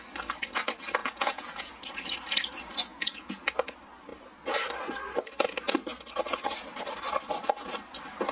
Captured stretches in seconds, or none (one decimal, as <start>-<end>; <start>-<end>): 0.0-1.0; 1.7-2.9; 3.4-8.3